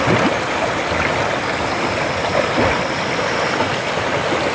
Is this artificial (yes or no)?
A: no